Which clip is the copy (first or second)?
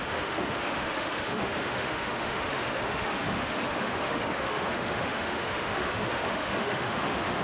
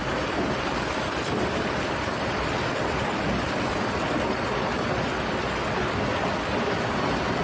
first